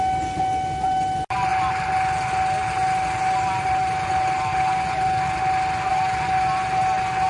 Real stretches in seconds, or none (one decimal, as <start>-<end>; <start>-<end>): 0.0-7.3